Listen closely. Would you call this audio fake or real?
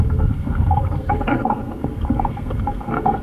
fake